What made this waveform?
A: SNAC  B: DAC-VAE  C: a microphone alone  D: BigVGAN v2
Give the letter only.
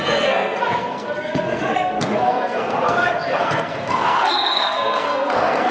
A